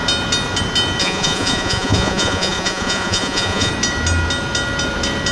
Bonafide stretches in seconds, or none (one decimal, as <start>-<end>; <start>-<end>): 0.0-1.0; 3.7-5.3